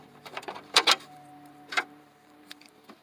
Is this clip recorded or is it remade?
remade